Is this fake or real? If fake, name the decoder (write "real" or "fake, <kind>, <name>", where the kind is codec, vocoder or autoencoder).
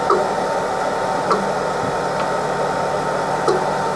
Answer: real